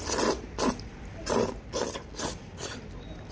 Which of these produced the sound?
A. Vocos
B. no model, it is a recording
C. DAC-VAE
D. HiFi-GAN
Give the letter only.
B